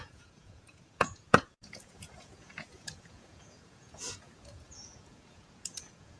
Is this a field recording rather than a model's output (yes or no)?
no